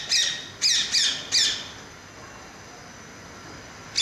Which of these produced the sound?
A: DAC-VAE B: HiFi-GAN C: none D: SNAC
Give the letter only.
C